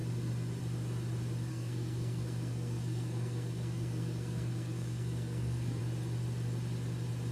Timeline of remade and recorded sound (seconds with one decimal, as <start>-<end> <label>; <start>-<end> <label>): 0.0-1.5 recorded; 1.5-5.8 remade; 5.8-7.3 recorded

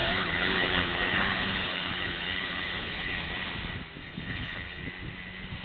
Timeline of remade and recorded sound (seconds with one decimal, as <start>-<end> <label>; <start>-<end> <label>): 0.0-3.3 remade; 3.3-4.0 recorded; 4.0-4.8 remade; 4.8-5.6 recorded

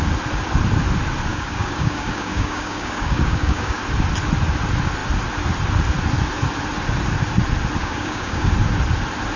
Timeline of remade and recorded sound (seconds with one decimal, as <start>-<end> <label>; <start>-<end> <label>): 0.0-1.3 recorded; 1.3-3.8 remade; 3.8-7.8 recorded; 7.8-8.5 remade; 8.5-9.4 recorded

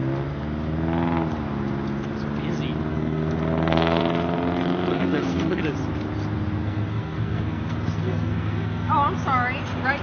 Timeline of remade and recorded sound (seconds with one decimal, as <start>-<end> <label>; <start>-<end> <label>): 0.0-2.9 recorded; 2.9-4.0 remade; 4.0-4.9 recorded; 4.9-5.6 remade; 5.6-6.6 recorded; 6.6-8.9 remade; 8.9-10.0 recorded

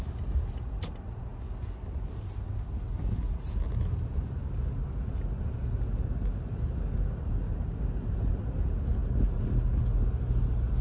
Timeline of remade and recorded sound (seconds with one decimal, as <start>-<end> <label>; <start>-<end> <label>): 0.0-10.8 recorded